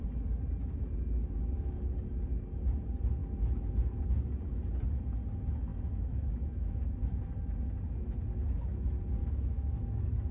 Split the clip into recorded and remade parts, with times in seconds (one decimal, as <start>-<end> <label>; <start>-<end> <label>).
0.0-5.7 recorded; 5.7-7.2 remade; 7.2-9.2 recorded; 9.2-9.8 remade; 9.8-10.3 recorded